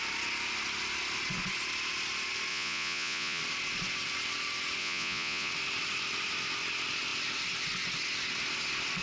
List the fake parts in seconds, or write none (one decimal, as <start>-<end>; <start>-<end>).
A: 2.5-3.4; 4.8-5.5

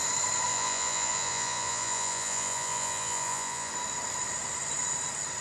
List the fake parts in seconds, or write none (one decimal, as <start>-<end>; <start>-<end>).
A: 0.5-3.7

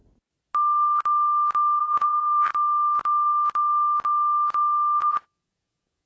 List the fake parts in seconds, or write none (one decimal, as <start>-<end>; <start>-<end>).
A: 1.8-2.5; 5.0-6.1